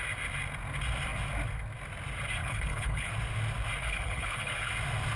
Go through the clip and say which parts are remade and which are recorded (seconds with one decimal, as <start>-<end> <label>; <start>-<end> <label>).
0.0-2.4 recorded; 2.4-3.1 remade; 3.1-3.8 recorded; 3.8-4.7 remade; 4.7-5.2 recorded